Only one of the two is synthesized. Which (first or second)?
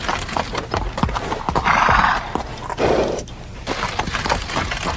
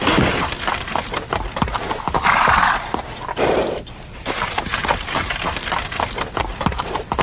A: second